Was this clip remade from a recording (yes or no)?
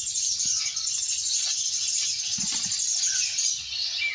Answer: no